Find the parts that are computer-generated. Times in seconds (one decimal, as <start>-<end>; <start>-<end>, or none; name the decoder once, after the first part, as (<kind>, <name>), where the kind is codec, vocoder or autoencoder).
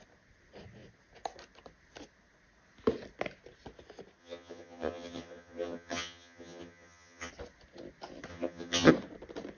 4.2-7.3 (vocoder, HiFi-GAN); 8.3-8.9